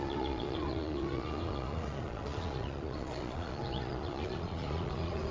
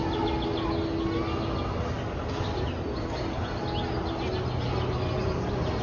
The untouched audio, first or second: second